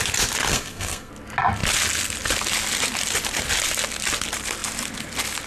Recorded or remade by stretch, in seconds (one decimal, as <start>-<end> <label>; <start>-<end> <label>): 0.0-0.5 recorded; 0.5-1.1 remade; 1.1-5.5 recorded